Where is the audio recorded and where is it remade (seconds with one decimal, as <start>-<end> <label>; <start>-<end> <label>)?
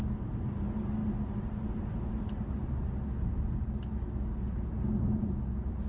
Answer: 0.0-5.9 recorded